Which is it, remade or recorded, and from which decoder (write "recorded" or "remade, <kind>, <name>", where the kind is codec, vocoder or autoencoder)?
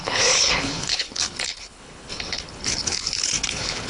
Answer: remade, codec, HILCodec